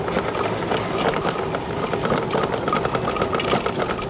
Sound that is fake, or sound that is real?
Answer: real